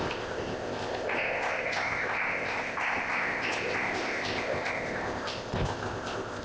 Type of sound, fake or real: fake